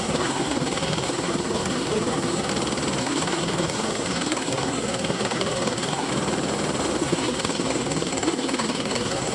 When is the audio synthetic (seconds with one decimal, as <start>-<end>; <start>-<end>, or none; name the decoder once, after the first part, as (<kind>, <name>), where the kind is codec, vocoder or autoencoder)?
0.0-2.5 (codec, SNAC); 3.0-6.1; 7.0-9.3